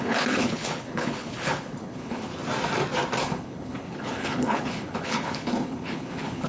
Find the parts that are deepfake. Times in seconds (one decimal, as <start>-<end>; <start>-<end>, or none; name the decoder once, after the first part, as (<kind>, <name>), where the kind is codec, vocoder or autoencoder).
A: 0.0-2.3 (codec, HILCodec); 3.2-6.5